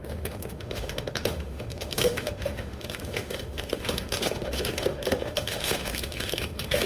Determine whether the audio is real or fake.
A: fake